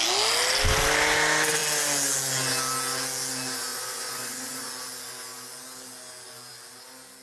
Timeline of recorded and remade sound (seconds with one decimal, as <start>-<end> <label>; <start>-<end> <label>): 0.0-3.7 recorded; 3.7-4.7 remade; 4.7-7.2 recorded